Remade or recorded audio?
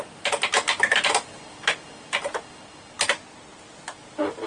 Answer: recorded